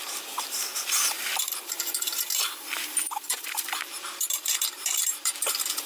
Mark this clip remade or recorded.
remade